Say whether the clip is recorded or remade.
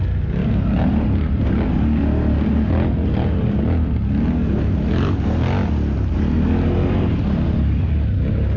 recorded